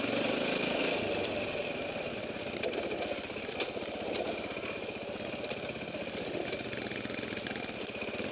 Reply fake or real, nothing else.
real